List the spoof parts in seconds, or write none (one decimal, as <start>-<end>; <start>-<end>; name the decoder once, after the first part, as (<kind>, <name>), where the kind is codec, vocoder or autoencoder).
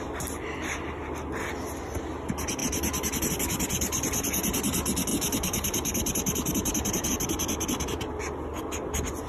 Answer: 5.1-7.1 (vocoder, BigVGAN v2)